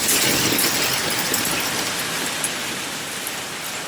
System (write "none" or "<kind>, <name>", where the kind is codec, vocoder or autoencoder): none